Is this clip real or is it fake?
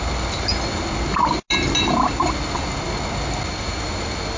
real